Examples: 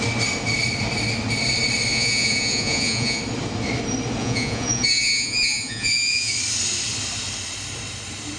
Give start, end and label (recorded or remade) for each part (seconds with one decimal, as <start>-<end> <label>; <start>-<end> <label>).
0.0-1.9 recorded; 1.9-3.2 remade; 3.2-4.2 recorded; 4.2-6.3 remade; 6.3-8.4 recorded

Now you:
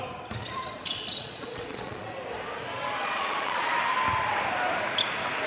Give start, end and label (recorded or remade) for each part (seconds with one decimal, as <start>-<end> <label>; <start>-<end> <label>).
0.0-0.4 recorded; 0.4-2.1 remade; 2.1-3.0 recorded; 3.0-3.7 remade; 3.7-5.5 recorded

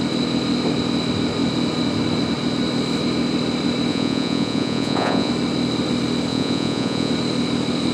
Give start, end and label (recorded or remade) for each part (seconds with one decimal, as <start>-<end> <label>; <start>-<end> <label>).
0.0-3.9 recorded; 3.9-5.3 remade; 5.3-6.3 recorded; 6.3-7.1 remade; 7.1-7.9 recorded

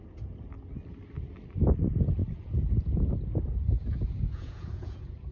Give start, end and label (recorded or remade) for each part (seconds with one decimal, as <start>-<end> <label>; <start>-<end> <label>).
0.0-2.2 recorded; 2.2-5.3 remade

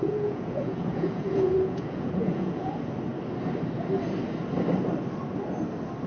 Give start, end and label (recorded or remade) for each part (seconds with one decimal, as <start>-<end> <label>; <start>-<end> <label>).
0.0-2.7 remade; 2.7-6.1 recorded

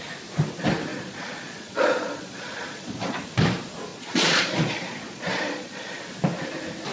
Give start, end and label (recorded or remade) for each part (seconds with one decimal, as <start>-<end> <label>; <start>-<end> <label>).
0.0-0.9 recorded; 0.9-3.2 remade; 3.2-3.9 recorded; 3.9-6.0 remade; 6.0-6.9 recorded